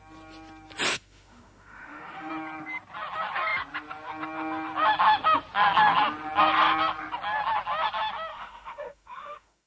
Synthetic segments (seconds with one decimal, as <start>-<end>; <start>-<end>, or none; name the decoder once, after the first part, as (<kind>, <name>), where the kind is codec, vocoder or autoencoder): 0.9-2.3 (autoencoder, DAC-VAE); 8.3-9.7